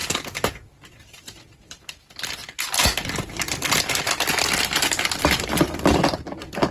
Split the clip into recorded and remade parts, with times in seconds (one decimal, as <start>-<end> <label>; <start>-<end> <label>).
0.0-6.7 recorded